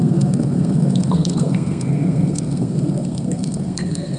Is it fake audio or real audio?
fake